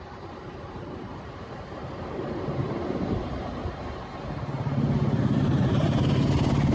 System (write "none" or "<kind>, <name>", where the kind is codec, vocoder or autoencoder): vocoder, BigVGAN v2